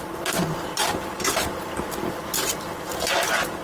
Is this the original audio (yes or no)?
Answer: yes